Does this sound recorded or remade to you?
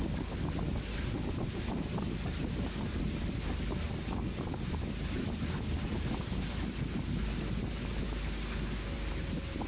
recorded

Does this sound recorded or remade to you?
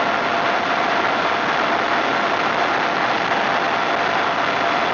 recorded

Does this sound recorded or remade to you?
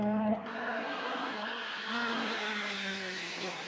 remade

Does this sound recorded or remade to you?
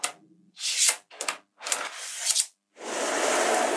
recorded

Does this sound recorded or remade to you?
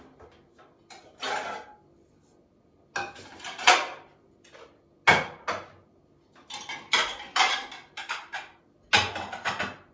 recorded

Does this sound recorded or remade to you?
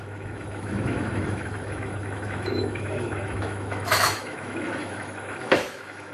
remade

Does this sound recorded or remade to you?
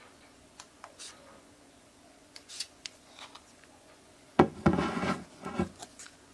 remade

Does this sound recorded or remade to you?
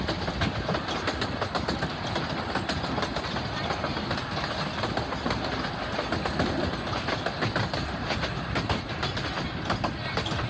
recorded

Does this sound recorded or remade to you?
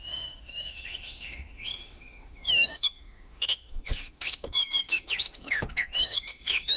remade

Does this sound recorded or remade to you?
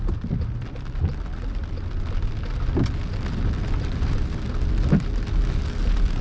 recorded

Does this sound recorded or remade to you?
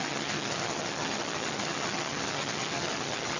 remade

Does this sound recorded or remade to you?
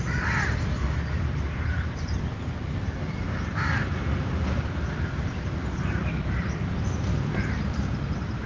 remade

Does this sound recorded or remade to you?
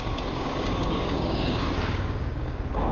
remade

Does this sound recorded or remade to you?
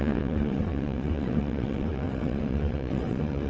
remade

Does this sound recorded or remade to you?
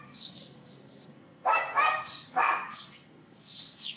remade